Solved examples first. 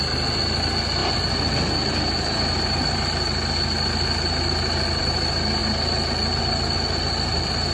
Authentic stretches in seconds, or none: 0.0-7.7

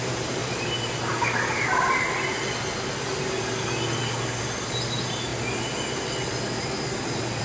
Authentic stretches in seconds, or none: 0.4-4.8; 5.3-7.4

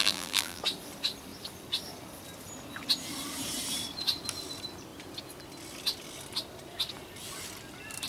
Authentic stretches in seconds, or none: 0.6-8.1

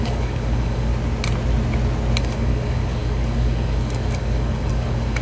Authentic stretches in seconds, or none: 0.9-2.2

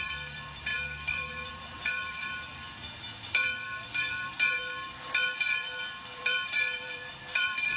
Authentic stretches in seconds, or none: none

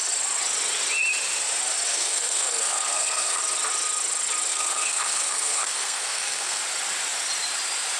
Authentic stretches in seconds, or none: 0.0-1.9; 3.4-4.5; 6.6-8.0

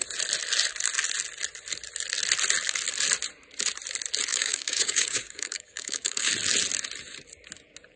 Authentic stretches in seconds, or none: 0.0-4.3; 6.3-8.0